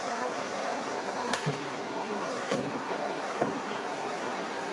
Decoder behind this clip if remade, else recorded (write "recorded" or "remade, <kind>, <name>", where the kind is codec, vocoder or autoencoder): remade, codec, SNAC